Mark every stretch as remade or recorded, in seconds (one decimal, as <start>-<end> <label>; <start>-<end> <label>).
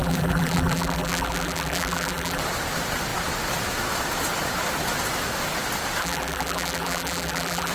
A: 0.0-2.4 remade; 2.4-6.0 recorded; 6.0-7.7 remade